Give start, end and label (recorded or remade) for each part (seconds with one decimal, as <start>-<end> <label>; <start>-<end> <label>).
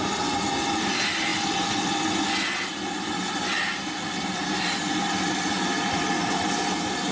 0.0-7.1 recorded